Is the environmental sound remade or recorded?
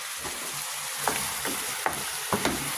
recorded